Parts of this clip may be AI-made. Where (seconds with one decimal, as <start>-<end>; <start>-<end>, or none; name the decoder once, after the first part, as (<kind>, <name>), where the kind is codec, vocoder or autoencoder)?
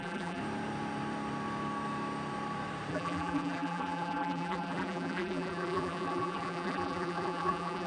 0.0-0.4 (vocoder, BigVGAN v2); 2.9-7.9